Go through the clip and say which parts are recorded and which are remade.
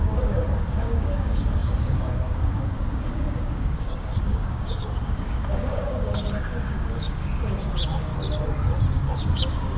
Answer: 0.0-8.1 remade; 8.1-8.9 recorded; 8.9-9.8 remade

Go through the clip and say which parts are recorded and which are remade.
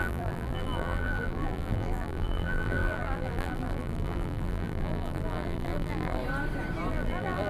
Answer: 0.0-6.2 remade; 6.2-6.9 recorded; 6.9-7.5 remade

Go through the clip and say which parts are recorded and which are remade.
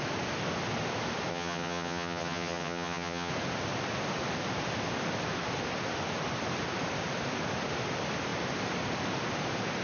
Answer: 0.0-1.3 recorded; 1.3-3.3 remade; 3.3-9.8 recorded